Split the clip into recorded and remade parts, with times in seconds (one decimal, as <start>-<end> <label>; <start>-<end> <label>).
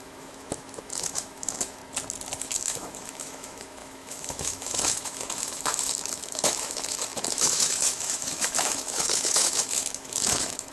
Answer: 0.0-1.8 remade; 1.8-2.4 recorded; 2.4-10.7 remade